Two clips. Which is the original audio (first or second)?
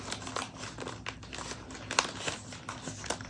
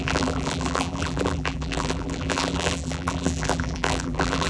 first